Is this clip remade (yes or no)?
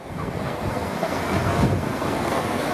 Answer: yes